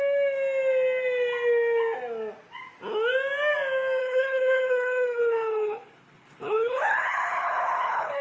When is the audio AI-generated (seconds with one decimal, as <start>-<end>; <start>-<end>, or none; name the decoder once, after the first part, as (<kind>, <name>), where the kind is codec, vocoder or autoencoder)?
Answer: 4.0-8.2 (codec, HILCodec)